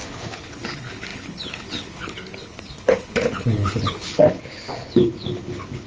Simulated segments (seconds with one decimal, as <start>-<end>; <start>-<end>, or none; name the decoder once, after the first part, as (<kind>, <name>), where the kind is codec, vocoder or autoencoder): 0.0-5.9 (codec, HILCodec)